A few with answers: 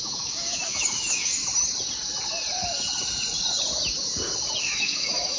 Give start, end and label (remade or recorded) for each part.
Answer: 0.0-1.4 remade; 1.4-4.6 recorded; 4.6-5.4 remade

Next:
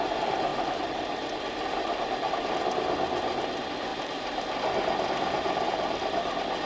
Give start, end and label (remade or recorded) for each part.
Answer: 0.0-0.5 recorded; 0.5-2.3 remade; 2.3-3.9 recorded; 3.9-4.6 remade; 4.6-6.7 recorded

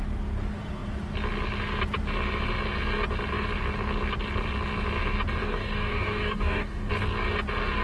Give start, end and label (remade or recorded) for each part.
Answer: 0.0-5.4 recorded; 5.4-6.9 remade; 6.9-7.8 recorded

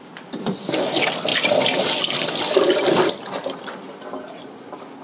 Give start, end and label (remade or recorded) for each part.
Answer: 0.0-5.0 recorded

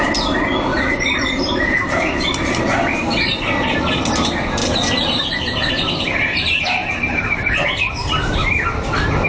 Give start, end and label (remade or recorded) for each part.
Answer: 0.0-0.7 recorded; 0.7-2.2 remade; 2.2-4.6 recorded; 4.6-5.7 remade; 5.7-6.8 recorded; 6.8-7.9 remade; 7.9-9.3 recorded